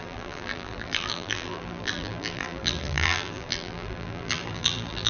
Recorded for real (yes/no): no